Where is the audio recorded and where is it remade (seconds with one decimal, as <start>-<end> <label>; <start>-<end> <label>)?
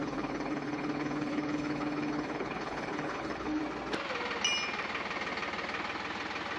0.0-3.6 remade; 3.6-6.6 recorded